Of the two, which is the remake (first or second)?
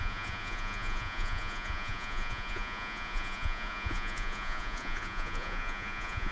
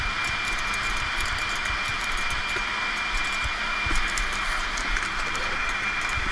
first